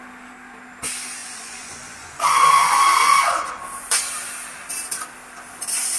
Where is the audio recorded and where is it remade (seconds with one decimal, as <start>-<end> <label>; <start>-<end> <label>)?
0.0-1.2 recorded; 1.2-3.5 remade; 3.5-6.0 recorded